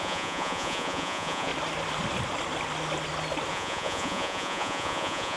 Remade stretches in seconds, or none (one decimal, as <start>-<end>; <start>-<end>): 0.0-1.5; 3.5-5.4